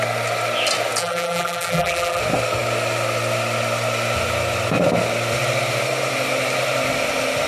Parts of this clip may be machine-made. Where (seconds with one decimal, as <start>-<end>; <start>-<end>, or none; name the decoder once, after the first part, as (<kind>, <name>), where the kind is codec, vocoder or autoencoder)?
1.0-2.2 (vocoder, BigVGAN v2)